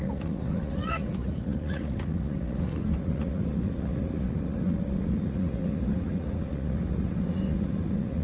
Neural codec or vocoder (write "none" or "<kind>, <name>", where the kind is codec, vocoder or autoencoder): vocoder, Vocos